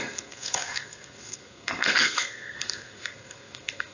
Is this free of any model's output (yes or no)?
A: no